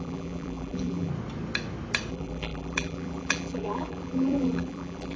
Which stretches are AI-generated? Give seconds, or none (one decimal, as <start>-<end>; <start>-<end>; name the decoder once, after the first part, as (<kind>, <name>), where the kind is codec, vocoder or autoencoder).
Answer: 0.0-1.1 (vocoder, BigVGAN v2); 2.1-5.2